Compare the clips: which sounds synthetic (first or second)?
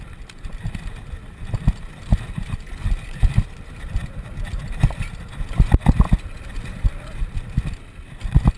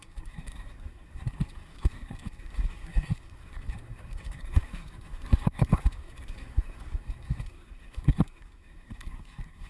second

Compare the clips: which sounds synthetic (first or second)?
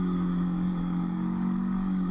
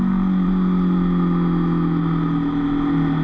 first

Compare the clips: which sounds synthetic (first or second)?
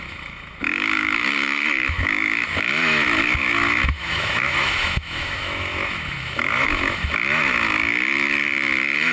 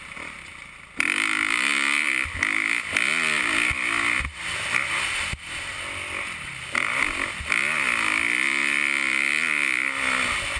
first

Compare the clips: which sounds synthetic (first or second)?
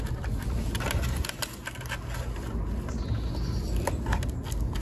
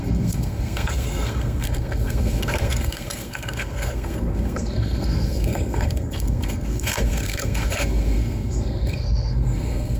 second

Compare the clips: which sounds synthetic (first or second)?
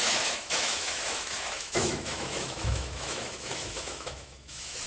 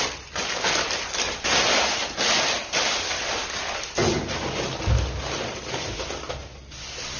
first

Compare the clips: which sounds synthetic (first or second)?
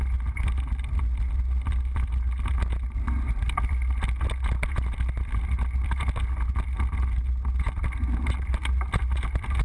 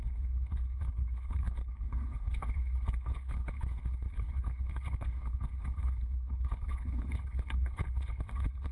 second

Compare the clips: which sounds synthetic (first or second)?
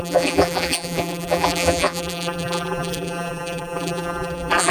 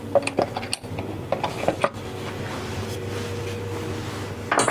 first